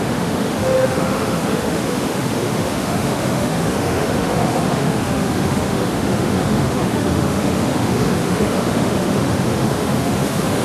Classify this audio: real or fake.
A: fake